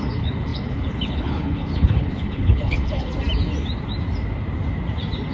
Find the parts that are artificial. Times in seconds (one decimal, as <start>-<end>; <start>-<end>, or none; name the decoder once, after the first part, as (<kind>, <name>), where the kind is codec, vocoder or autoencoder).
0.0-3.1 (codec, HILCodec)